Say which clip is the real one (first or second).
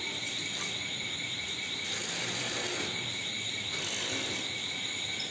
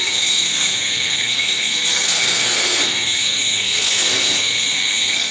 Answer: first